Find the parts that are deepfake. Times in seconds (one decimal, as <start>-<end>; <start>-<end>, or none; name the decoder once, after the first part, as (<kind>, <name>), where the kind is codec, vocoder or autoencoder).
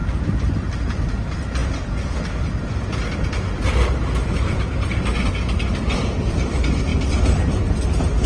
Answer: none